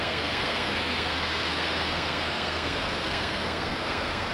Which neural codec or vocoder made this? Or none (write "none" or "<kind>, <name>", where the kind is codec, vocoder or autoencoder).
codec, SNAC